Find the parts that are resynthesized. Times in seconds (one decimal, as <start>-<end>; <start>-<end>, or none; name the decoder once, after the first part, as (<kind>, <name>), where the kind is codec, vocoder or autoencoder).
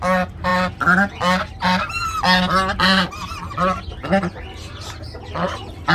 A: none